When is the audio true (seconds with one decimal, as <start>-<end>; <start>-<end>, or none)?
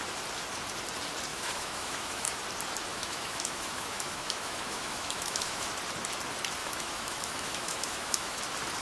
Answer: 0.0-1.3; 2.4-2.9; 5.7-6.6; 8.4-8.8